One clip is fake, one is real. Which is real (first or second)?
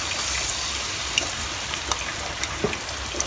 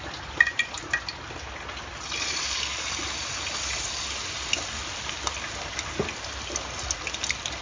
second